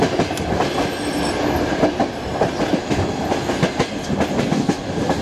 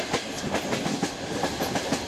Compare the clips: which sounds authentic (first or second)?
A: first